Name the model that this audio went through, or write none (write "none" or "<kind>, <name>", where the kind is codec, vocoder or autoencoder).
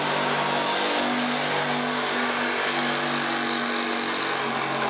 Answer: none